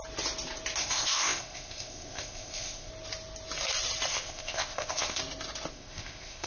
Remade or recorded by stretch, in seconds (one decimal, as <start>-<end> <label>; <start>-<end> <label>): 0.0-0.8 recorded; 0.8-2.9 remade; 2.9-4.1 recorded; 4.1-5.2 remade; 5.2-5.7 recorded; 5.7-6.5 remade